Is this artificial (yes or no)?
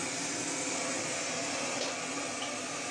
no